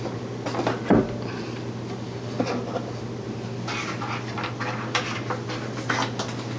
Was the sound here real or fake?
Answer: real